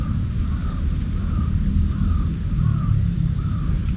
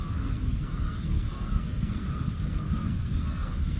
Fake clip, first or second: second